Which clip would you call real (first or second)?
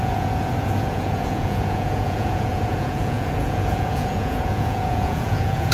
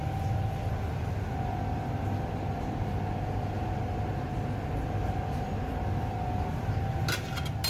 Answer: second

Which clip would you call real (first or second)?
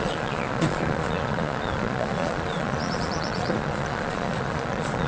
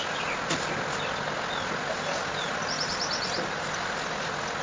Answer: second